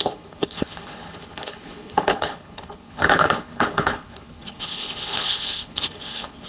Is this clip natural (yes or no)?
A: no